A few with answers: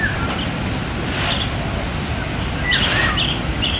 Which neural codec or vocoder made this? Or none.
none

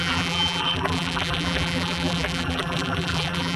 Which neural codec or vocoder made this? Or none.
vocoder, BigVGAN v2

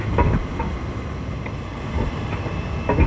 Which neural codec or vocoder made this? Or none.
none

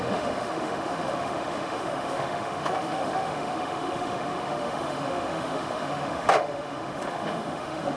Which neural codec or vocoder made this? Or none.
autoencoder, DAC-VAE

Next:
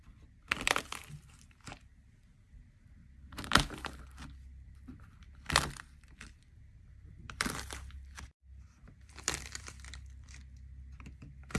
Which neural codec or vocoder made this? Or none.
vocoder, BigVGAN v2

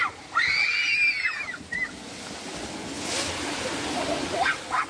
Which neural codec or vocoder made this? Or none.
none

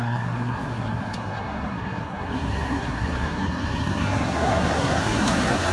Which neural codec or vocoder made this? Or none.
codec, SNAC